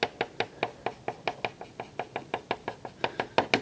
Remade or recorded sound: recorded